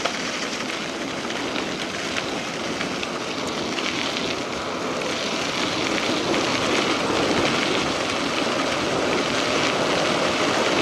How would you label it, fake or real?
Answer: real